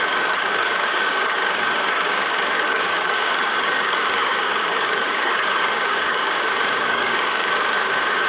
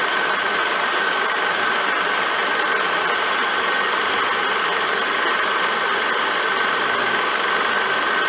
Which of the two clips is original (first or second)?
second